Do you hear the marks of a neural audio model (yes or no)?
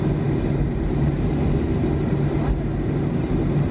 no